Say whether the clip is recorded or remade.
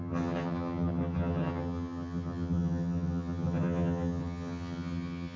remade